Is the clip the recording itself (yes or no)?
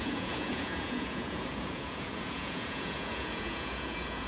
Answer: no